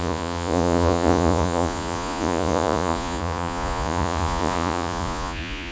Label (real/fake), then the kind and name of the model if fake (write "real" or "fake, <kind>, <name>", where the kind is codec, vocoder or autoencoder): fake, vocoder, Vocos